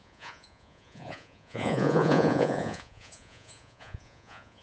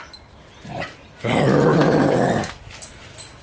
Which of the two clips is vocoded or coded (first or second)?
first